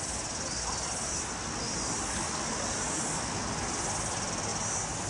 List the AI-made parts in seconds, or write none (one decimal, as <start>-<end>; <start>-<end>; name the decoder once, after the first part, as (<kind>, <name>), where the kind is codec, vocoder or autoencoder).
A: none